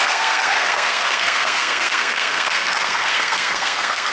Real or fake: fake